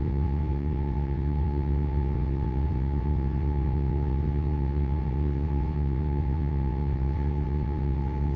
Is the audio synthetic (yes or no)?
yes